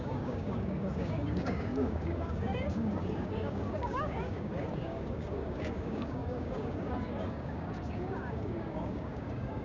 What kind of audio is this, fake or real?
fake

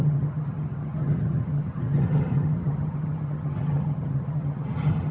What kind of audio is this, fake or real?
fake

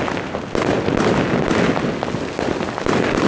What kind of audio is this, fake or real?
real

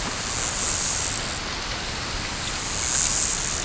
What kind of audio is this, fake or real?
real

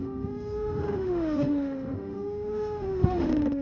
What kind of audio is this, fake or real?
fake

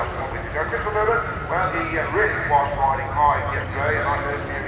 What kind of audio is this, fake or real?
real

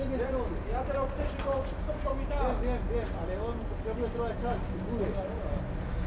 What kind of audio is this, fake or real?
real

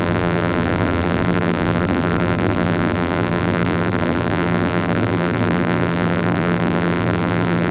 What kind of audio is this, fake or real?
fake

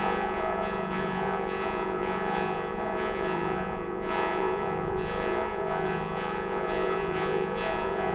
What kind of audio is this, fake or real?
fake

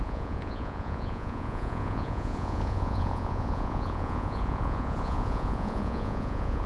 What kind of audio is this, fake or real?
fake